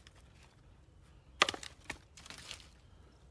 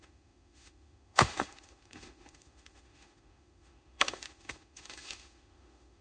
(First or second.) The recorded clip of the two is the first